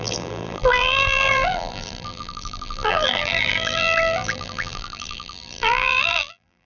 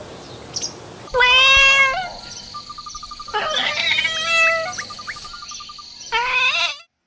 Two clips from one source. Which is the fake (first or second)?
first